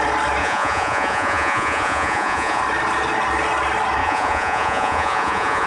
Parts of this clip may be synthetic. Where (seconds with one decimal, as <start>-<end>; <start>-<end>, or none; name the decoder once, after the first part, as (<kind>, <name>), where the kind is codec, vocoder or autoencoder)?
0.4-2.6 (vocoder, Vocos); 4.0-5.7

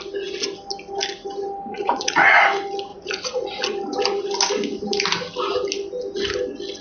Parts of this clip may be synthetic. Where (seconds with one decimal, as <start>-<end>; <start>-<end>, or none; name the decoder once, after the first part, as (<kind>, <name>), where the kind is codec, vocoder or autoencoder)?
1.7-2.4 (vocoder, Vocos); 2.9-3.6

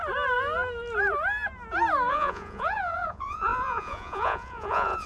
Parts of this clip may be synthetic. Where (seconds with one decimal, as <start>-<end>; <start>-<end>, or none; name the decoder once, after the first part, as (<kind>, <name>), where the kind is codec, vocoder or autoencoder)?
2.1-5.1 (vocoder, Vocos)

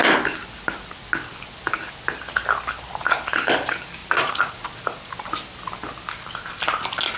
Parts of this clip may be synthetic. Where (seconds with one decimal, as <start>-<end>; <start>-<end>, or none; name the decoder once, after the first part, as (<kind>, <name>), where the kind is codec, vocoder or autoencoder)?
4.0-4.5 (vocoder, Vocos)